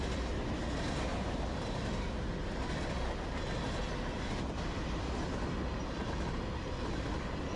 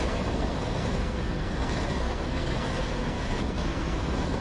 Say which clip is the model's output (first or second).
second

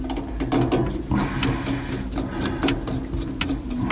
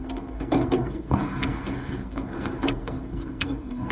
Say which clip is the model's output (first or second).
second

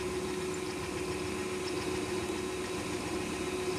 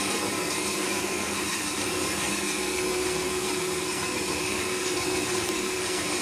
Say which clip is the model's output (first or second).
second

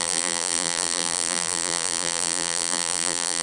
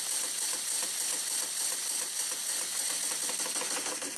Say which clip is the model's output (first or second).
first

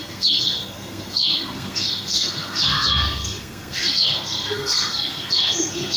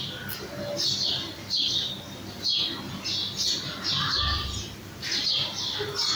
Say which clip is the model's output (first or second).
first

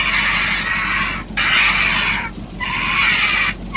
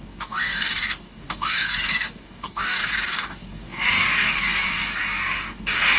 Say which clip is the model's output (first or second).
second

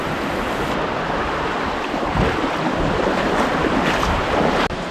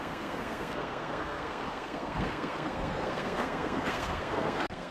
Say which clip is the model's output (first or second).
second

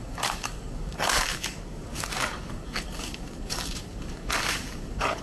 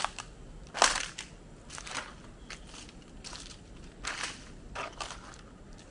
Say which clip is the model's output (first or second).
first